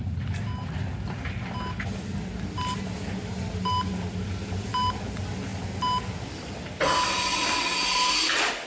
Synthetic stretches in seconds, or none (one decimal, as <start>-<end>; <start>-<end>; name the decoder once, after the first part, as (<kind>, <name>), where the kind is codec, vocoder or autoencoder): none